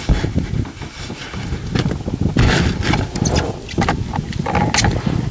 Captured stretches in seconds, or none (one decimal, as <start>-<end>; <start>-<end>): 0.0-5.3